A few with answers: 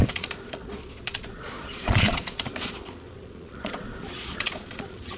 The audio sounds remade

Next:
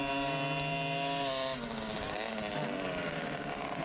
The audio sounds recorded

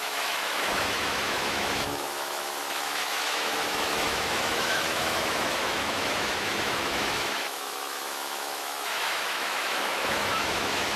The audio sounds remade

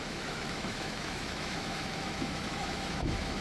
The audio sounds remade